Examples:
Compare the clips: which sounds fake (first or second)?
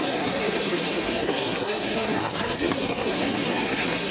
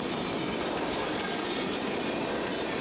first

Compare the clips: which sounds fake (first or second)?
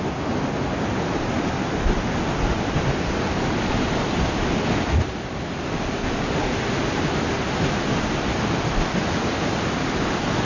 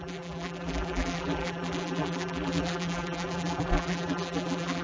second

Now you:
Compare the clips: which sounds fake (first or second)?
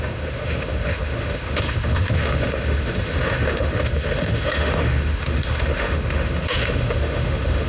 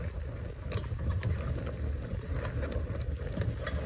first